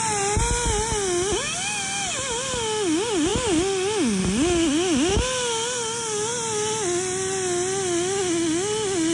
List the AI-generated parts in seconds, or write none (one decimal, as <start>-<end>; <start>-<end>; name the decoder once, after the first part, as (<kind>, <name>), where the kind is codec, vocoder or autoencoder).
none